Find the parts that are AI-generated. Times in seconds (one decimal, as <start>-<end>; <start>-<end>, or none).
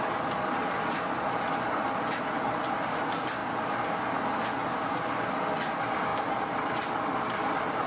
6.1-6.9